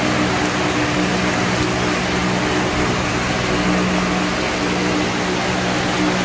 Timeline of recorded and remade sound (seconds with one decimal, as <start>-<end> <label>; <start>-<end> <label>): 0.0-6.2 recorded